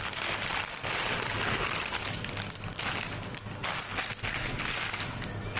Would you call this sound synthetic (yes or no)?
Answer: no